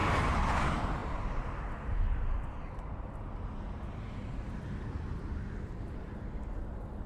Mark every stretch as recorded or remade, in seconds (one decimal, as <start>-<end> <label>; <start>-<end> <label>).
0.0-7.1 recorded